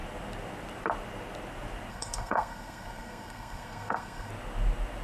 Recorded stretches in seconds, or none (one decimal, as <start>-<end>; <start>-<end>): 0.0-1.9; 4.3-5.0